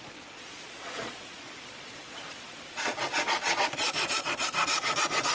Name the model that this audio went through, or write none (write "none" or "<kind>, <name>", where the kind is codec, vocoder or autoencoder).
vocoder, Vocos